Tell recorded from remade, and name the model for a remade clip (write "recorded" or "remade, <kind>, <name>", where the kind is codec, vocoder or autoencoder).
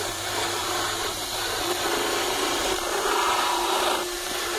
remade, vocoder, BigVGAN v2